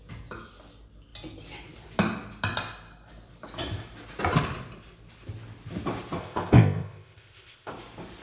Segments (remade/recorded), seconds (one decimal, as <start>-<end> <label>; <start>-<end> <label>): 0.0-6.2 recorded; 6.2-7.7 remade; 7.7-8.2 recorded